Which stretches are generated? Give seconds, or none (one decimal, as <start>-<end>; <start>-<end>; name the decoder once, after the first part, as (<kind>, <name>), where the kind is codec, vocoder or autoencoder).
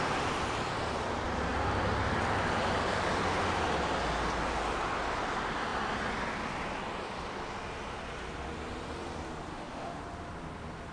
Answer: 9.5-10.0 (autoencoder, DAC-VAE)